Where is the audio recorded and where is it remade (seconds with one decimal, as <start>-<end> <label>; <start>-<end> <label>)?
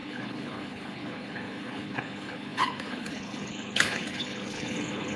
0.0-5.2 remade